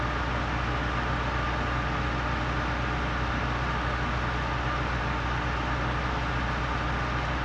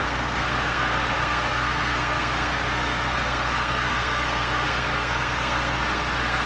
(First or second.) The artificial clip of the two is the second